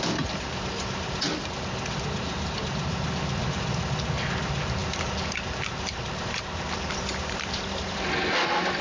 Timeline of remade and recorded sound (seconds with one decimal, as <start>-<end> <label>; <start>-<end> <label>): 0.0-8.8 recorded